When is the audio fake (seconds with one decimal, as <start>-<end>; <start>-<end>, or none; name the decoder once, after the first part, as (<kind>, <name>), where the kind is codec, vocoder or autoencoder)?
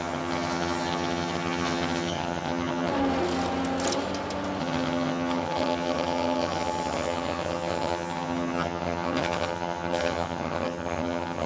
0.0-2.9 (vocoder, HiFi-GAN); 4.6-11.5